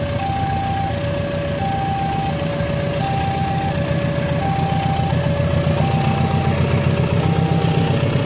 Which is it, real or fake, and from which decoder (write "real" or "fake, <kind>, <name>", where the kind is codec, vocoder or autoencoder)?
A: real